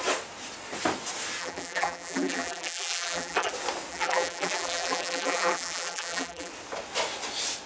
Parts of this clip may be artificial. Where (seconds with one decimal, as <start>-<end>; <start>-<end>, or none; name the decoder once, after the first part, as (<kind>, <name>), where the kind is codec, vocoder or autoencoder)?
1.4-3.5 (vocoder, BigVGAN v2); 3.9-6.5